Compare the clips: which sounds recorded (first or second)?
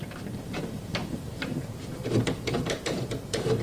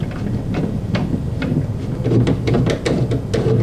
second